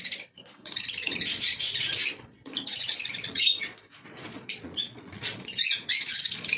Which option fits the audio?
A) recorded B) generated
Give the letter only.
B